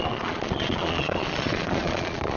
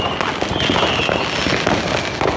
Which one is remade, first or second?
first